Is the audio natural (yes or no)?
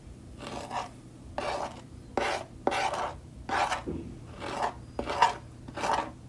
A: yes